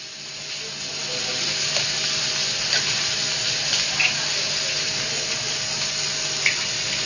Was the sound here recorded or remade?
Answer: recorded